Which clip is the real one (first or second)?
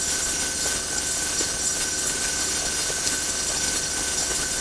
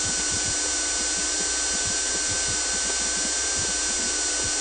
second